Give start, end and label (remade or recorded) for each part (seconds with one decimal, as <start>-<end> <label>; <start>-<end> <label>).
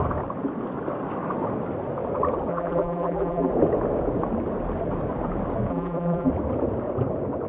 0.0-2.5 recorded; 2.5-3.5 remade; 3.5-5.7 recorded; 5.7-6.3 remade; 6.3-7.5 recorded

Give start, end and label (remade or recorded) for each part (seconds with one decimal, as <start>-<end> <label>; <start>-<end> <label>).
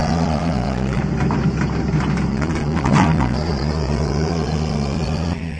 0.0-1.0 remade; 1.0-2.3 recorded; 2.3-5.6 remade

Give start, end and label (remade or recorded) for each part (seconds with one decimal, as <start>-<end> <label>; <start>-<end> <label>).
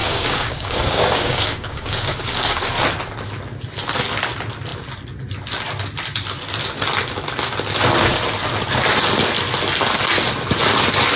0.0-2.6 remade; 2.6-11.2 recorded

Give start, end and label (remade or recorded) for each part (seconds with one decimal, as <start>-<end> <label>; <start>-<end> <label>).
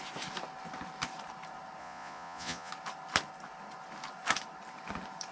0.0-1.8 recorded; 1.8-2.7 remade; 2.7-5.3 recorded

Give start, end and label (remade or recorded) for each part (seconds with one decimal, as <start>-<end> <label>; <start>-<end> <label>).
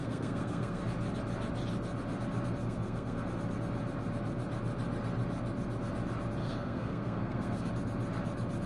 0.0-0.8 remade; 0.8-2.6 recorded; 2.6-3.2 remade; 3.2-6.4 recorded; 6.4-7.7 remade; 7.7-8.7 recorded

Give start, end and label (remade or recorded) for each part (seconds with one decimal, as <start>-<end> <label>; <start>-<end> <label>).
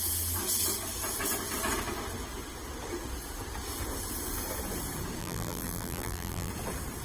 0.0-5.2 recorded; 5.2-6.5 remade; 6.5-7.0 recorded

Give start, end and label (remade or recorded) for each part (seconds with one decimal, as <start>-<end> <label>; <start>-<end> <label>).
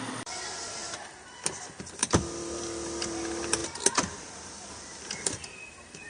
0.0-0.8 remade; 0.8-1.8 recorded; 1.8-3.6 remade; 3.6-4.3 recorded; 4.3-6.1 remade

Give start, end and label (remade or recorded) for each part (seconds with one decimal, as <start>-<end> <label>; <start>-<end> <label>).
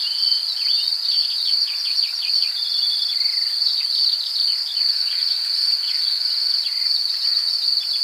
0.0-8.0 recorded